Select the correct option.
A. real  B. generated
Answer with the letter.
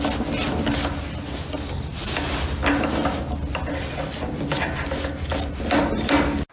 A